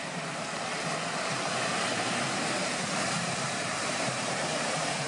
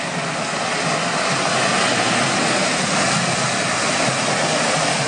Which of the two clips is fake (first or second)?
first